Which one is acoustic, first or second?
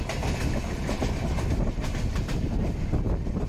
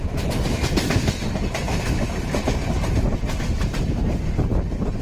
first